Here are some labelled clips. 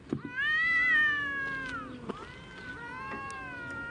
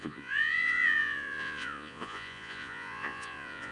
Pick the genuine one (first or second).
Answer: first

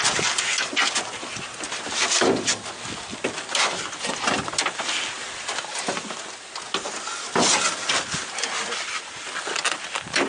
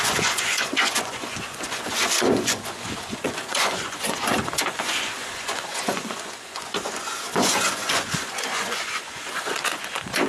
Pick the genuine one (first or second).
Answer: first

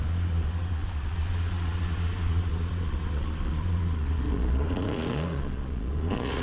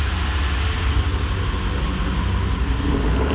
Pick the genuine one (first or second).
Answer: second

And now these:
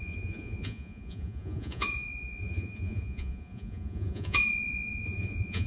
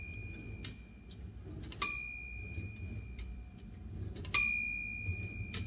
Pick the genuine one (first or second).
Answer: second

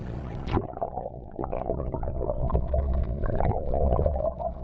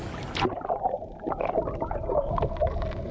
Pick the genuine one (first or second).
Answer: second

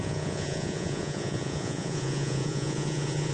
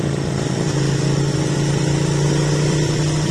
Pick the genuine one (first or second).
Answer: second